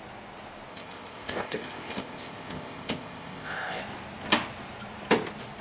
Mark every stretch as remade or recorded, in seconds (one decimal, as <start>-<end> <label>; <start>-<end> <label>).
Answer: 0.0-0.7 recorded; 0.7-3.8 remade; 3.8-5.6 recorded